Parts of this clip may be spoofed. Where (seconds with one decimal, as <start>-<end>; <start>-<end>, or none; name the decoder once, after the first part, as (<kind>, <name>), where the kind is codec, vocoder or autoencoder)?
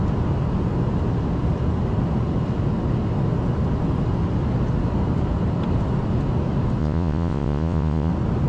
6.8-8.1 (vocoder, Vocos)